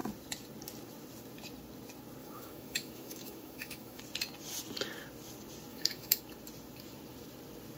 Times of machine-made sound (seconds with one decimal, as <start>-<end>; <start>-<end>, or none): 2.2-4.0; 5.7-6.2